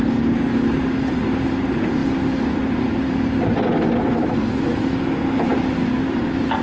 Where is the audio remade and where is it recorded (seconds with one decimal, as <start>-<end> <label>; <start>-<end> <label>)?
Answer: 0.0-6.6 recorded